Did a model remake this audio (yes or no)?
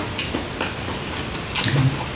no